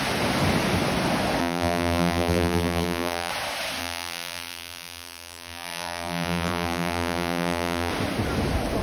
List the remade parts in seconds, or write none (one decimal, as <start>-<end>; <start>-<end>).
1.4-3.3; 3.8-7.9